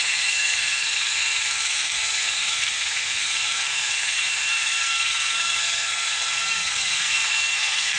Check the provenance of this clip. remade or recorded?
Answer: remade